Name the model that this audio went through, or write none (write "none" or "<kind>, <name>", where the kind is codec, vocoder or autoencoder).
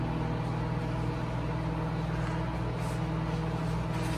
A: none